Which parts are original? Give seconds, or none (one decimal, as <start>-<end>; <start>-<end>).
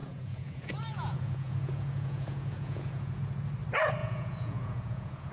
3.2-4.0